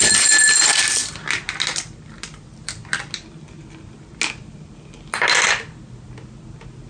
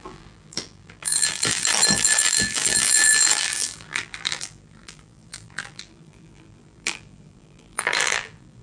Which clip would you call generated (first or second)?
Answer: second